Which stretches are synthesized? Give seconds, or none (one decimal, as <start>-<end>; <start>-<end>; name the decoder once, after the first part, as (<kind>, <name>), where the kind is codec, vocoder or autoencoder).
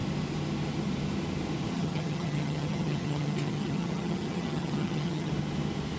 1.7-5.3 (vocoder, HiFi-GAN)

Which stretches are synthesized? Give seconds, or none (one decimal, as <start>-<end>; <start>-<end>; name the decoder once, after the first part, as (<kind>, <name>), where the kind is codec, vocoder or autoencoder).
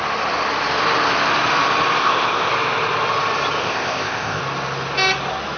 2.0-2.5 (codec, ZipCodec); 3.6-4.4